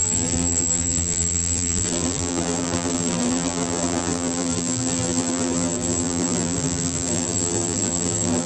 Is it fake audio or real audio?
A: fake